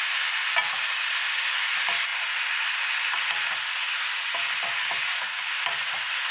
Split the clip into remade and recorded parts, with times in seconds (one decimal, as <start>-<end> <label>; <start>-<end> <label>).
0.0-6.3 recorded